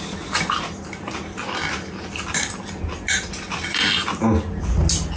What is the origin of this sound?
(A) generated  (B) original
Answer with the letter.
B